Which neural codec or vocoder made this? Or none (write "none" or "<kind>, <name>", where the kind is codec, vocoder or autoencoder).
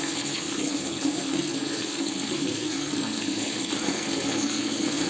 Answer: codec, SNAC